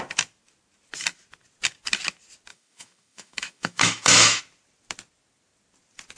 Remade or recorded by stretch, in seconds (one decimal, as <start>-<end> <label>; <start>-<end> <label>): 0.0-2.5 recorded; 2.5-4.4 remade; 4.4-6.2 recorded